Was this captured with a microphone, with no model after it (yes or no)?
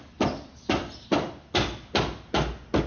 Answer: yes